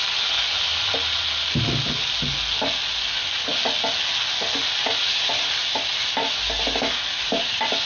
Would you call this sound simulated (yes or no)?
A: no